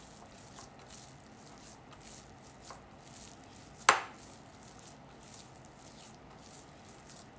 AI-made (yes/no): no